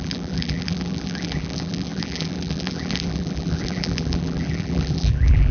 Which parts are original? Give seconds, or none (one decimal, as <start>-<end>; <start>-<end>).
none